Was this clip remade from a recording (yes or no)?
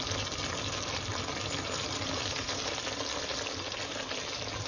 no